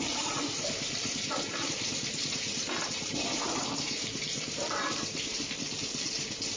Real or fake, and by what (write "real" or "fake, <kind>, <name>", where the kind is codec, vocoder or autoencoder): fake, vocoder, BigVGAN v2